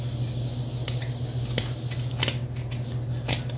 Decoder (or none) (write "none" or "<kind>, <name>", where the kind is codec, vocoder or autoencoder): none